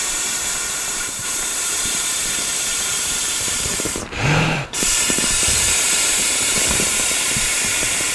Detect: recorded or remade remade